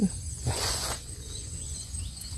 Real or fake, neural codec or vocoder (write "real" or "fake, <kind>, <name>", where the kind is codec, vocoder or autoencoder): fake, vocoder, Vocos